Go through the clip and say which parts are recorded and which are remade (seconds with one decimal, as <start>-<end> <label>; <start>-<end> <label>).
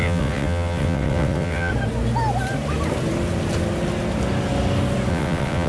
0.0-1.7 remade; 1.7-5.1 recorded; 5.1-5.7 remade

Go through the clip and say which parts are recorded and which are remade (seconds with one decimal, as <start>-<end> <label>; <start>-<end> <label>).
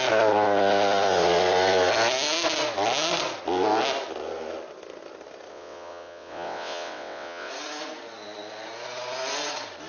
0.0-5.5 recorded; 5.5-7.5 remade; 7.5-9.9 recorded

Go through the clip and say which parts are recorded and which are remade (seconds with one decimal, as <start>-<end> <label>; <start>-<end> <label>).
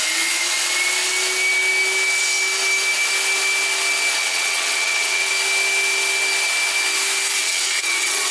0.0-4.2 recorded; 4.2-5.3 remade; 5.3-7.4 recorded; 7.4-8.3 remade